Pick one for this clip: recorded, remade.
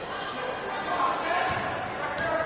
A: recorded